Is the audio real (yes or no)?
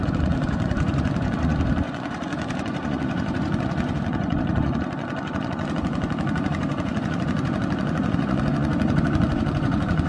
no